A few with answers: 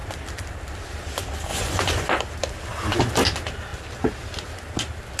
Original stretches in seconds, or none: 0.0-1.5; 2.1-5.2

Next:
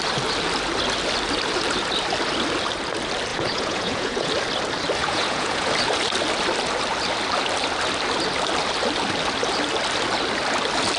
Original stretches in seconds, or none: 0.0-3.3; 4.3-5.0; 5.7-11.0

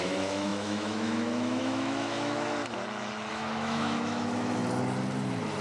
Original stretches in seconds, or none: 2.6-3.3; 4.6-5.6

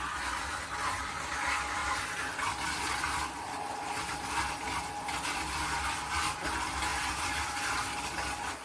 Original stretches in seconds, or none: 0.0-6.9; 7.8-8.6

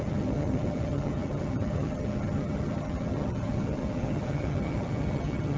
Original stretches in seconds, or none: none

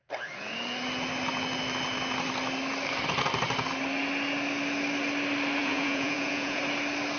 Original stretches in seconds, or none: 0.0-5.6; 6.6-7.2